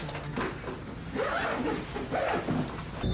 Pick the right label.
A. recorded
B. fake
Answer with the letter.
A